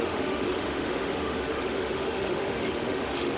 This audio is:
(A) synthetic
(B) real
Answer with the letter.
A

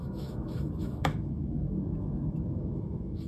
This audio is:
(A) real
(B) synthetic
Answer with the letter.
B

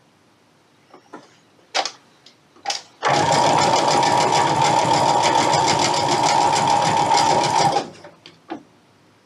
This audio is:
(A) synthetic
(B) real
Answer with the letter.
B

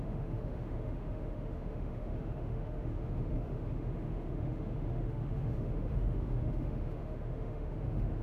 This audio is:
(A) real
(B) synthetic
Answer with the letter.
B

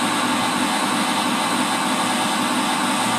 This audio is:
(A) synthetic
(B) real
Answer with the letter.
B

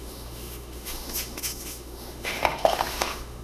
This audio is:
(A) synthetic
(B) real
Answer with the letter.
A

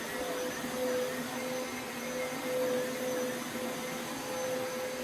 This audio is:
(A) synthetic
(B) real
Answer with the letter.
B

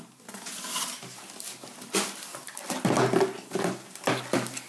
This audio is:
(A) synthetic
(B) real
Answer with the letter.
B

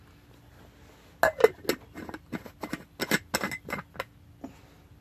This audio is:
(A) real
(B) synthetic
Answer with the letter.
A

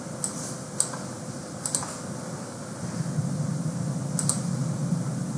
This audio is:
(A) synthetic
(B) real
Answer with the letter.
B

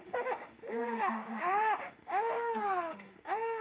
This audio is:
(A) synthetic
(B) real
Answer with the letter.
A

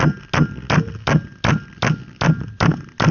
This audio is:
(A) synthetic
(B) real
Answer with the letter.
B